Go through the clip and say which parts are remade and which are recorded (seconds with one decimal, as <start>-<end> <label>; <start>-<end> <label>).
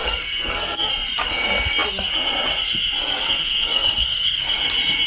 0.0-0.9 remade; 0.9-3.0 recorded; 3.0-4.6 remade; 4.6-5.1 recorded